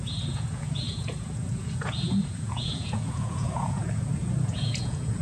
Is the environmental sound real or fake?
fake